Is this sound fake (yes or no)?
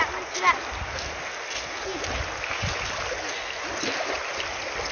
no